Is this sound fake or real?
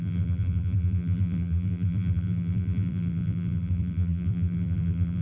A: fake